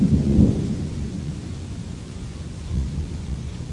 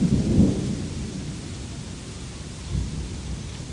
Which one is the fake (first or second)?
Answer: first